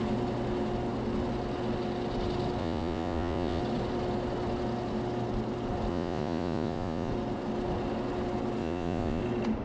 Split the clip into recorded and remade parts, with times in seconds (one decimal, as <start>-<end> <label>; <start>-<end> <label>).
0.0-2.6 recorded; 2.6-3.6 remade; 3.6-5.9 recorded; 5.9-7.1 remade; 7.1-8.6 recorded; 8.6-9.2 remade; 9.2-9.6 recorded